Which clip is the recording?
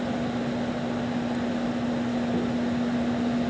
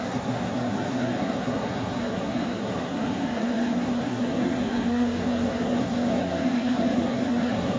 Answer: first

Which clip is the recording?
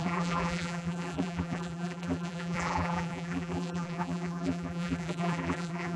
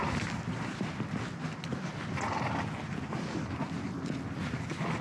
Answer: second